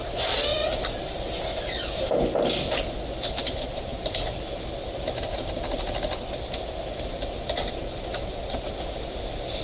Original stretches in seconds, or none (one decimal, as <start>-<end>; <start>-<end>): 0.0-9.6